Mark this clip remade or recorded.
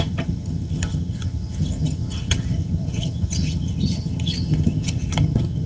remade